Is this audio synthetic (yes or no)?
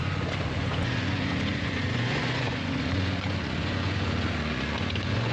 yes